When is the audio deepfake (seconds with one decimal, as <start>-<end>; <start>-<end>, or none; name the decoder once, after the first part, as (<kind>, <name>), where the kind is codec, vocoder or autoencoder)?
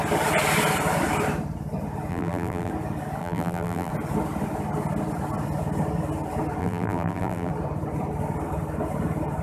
2.1-2.7 (vocoder, BigVGAN v2); 3.2-3.9; 6.6-7.5